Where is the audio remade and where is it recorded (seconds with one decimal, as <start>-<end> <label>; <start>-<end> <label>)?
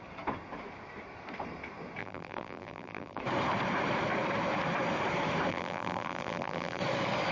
0.0-2.0 recorded; 2.0-3.2 remade; 3.2-5.5 recorded; 5.5-6.8 remade; 6.8-7.3 recorded